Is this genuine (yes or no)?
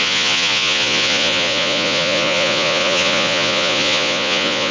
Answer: no